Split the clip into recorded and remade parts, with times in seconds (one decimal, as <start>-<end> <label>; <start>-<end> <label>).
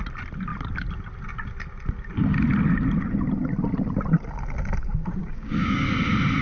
0.0-5.2 recorded; 5.2-5.9 remade; 5.9-6.4 recorded